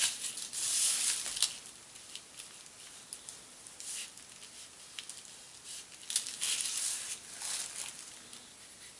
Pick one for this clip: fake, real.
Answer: real